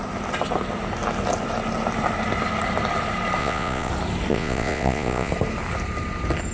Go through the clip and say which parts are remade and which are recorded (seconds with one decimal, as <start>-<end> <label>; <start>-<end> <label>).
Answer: 0.0-3.4 recorded; 3.4-3.9 remade; 3.9-4.3 recorded; 4.3-5.3 remade; 5.3-6.5 recorded